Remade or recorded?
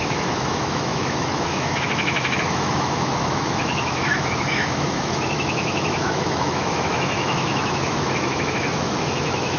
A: remade